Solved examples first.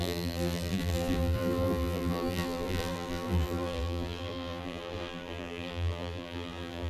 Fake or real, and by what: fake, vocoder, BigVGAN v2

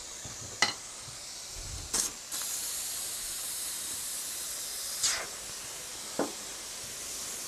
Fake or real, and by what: real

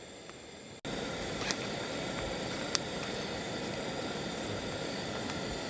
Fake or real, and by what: real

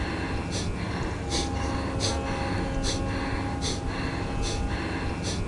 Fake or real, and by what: real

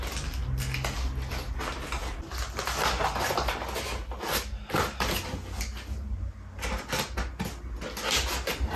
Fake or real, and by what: real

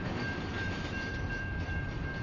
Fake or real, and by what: fake, vocoder, BigVGAN v2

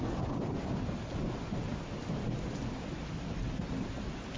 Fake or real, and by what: real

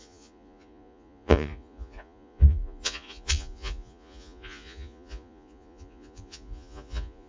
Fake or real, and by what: fake, vocoder, Vocos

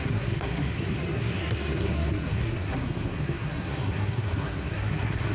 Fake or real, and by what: fake, codec, SNAC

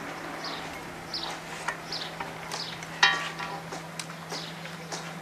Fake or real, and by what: real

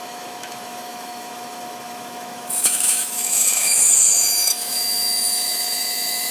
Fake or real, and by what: fake, autoencoder, DAC-VAE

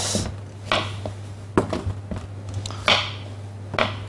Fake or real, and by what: real